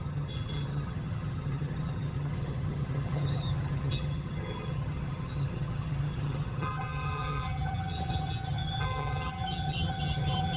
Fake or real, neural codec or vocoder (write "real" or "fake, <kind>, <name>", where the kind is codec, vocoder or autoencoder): fake, vocoder, HiFi-GAN